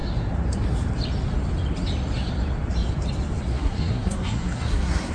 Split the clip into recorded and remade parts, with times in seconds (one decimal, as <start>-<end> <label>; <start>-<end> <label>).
0.0-3.5 recorded; 3.5-5.1 remade